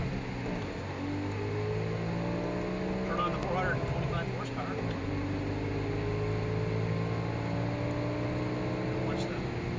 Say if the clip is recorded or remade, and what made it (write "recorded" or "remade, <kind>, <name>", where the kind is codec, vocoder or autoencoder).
recorded